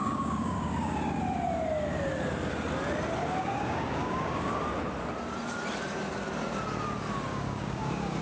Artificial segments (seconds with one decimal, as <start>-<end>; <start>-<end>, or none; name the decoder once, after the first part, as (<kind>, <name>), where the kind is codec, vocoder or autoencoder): 0.0-1.2 (codec, DAC); 3.2-4.6; 7.3-8.2